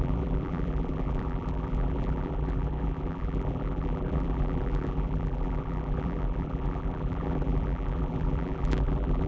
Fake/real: fake